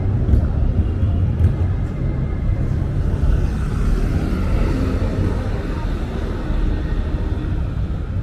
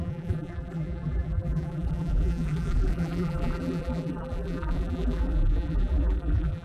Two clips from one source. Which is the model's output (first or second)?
second